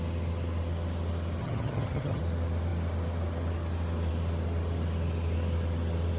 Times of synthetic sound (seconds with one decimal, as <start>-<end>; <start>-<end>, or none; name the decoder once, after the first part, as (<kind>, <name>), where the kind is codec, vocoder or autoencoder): 1.4-2.2 (vocoder, HiFi-GAN)